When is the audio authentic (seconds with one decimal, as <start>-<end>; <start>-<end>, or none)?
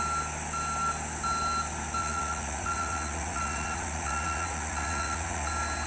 0.0-2.0; 5.5-5.9